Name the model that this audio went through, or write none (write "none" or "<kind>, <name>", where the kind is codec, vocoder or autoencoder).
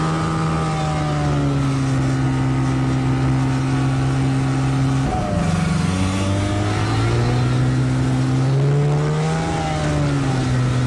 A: none